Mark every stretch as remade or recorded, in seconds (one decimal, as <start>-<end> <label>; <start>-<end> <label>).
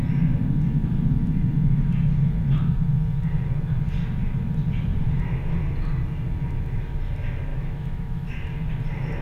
0.0-7.5 recorded; 7.5-8.3 remade; 8.3-9.2 recorded